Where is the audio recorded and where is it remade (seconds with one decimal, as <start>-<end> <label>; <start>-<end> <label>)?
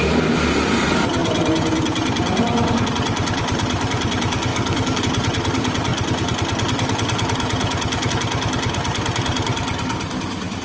0.0-4.5 recorded; 4.5-5.0 remade; 5.0-10.6 recorded